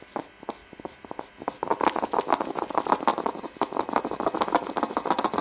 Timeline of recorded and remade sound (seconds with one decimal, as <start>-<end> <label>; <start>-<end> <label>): 0.0-0.6 recorded; 0.6-1.2 remade; 1.2-3.1 recorded; 3.1-4.0 remade; 4.0-5.4 recorded